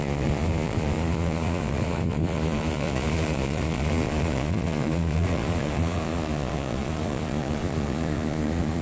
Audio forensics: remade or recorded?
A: remade